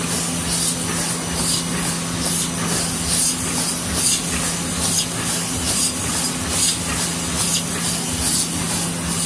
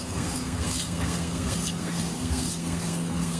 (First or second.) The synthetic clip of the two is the second